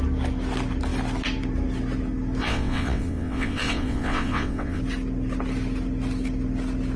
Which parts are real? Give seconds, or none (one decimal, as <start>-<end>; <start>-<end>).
0.0-2.4; 4.8-7.0